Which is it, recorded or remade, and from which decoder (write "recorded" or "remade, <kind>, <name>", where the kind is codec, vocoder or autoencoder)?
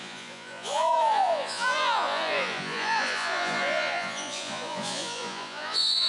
remade, vocoder, Vocos